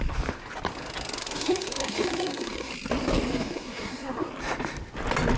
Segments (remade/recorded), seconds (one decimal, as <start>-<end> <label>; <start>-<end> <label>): 0.0-1.2 recorded; 1.2-2.7 remade; 2.7-3.3 recorded; 3.3-4.3 remade; 4.3-5.4 recorded